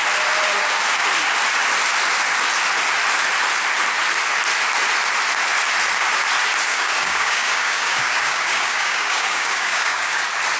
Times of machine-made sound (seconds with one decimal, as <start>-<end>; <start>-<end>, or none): 6.7-10.2